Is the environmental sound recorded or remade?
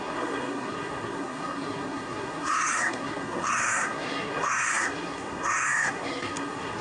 remade